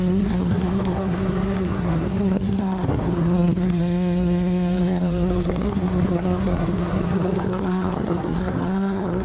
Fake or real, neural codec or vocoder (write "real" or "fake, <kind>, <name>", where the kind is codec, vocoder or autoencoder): fake, codec, SNAC